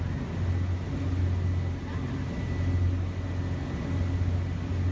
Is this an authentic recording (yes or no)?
yes